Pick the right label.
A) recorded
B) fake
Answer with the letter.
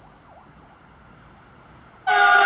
A